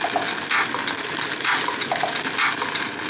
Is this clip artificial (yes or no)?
no